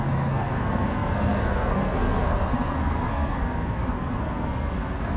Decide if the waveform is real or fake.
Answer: fake